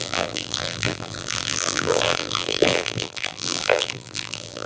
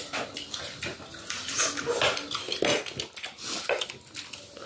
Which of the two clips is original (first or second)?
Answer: second